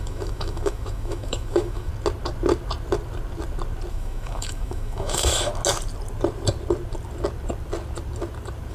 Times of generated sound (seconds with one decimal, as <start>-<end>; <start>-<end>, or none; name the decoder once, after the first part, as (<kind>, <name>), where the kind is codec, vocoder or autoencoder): 0.0-1.9 (autoencoder, DAC-VAE); 3.9-5.5